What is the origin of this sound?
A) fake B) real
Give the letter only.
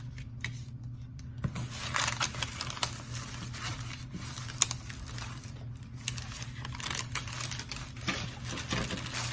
B